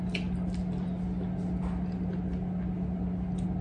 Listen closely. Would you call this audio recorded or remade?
recorded